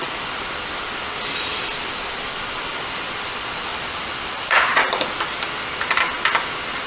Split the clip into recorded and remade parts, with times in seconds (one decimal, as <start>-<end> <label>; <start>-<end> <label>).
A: 0.0-1.8 recorded; 1.8-2.8 remade; 2.8-3.7 recorded; 3.7-4.8 remade; 4.8-6.9 recorded